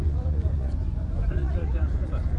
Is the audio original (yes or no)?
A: no